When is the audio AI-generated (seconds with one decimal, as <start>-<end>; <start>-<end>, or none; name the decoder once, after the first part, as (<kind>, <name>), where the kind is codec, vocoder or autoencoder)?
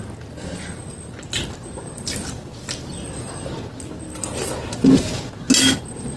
none